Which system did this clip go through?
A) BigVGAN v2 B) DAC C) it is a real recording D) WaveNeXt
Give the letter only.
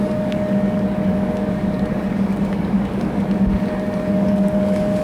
B